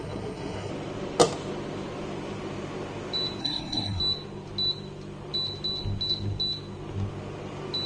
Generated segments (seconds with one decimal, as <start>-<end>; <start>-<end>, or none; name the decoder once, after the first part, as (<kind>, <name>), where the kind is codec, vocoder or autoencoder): 0.0-0.7 (codec, SNAC); 3.4-4.0